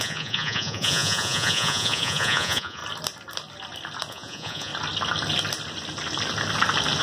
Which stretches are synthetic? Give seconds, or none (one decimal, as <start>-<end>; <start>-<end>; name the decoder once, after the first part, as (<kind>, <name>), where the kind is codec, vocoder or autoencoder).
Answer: 0.0-2.8 (vocoder, Vocos); 4.1-4.7